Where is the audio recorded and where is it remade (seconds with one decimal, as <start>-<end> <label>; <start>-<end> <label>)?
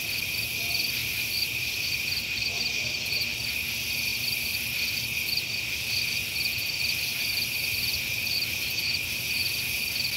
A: 0.0-1.0 recorded; 1.0-3.1 remade; 3.1-4.1 recorded; 4.1-5.0 remade; 5.0-10.2 recorded